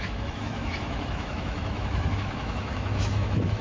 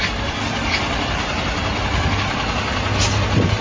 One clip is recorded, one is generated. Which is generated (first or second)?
first